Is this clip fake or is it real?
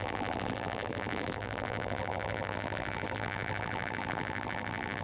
fake